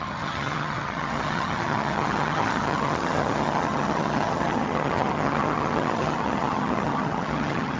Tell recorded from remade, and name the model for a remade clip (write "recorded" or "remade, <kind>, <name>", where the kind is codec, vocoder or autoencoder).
remade, vocoder, HiFi-GAN